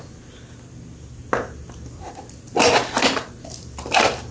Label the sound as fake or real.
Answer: real